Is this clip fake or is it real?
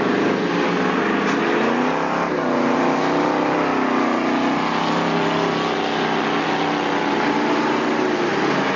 real